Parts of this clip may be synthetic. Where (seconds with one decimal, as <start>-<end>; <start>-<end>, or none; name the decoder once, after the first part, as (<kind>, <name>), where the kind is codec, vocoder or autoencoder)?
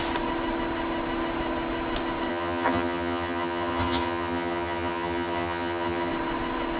2.3-6.1 (vocoder, HiFi-GAN)